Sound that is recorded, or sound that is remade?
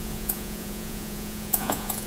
remade